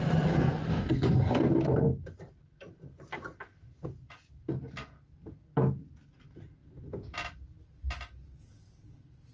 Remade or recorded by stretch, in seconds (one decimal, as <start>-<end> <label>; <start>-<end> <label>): 0.0-0.7 recorded; 0.7-1.4 remade; 1.4-9.3 recorded